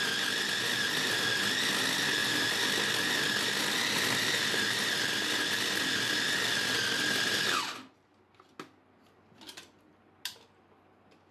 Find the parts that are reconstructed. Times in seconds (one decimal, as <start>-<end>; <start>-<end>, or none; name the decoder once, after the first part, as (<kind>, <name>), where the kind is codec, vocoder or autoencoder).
none